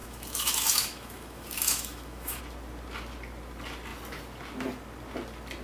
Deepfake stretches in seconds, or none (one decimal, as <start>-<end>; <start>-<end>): 0.0-2.4